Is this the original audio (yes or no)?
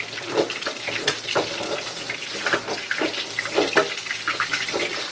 yes